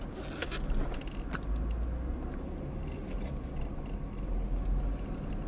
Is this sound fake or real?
real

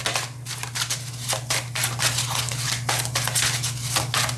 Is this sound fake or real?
real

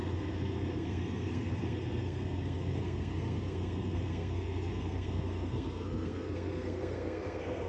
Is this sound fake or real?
fake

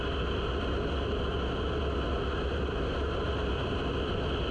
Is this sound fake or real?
real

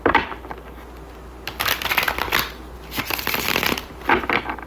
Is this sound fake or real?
real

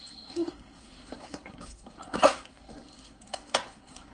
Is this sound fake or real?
fake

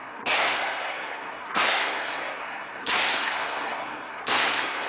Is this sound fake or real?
fake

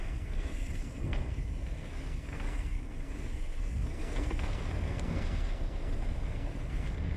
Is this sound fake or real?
fake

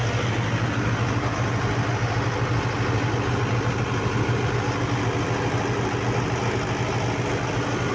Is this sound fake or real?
real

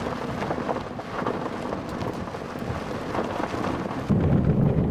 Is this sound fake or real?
real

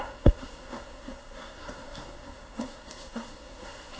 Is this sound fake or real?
fake